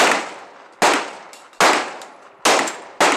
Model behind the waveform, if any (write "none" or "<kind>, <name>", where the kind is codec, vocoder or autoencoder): none